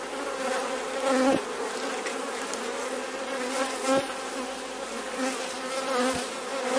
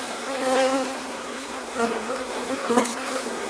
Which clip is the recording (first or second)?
first